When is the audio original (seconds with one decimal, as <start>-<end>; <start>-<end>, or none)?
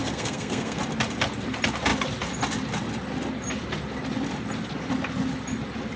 0.8-6.0